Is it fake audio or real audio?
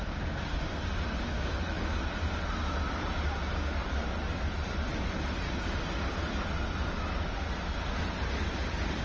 real